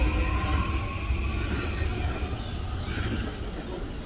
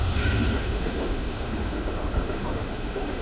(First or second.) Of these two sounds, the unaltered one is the first